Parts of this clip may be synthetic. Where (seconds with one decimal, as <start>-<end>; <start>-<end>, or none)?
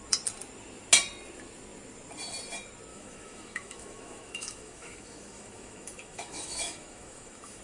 2.9-7.6